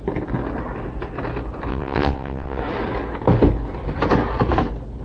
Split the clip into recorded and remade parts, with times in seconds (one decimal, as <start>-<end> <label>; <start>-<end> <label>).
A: 0.0-1.7 recorded; 1.7-2.6 remade; 2.6-5.0 recorded